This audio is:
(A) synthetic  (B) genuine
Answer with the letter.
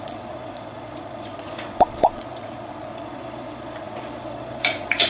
A